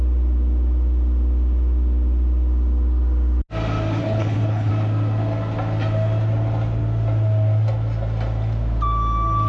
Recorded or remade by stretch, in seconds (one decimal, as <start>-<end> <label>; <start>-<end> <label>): 0.0-4.0 recorded; 4.0-4.7 remade; 4.7-9.5 recorded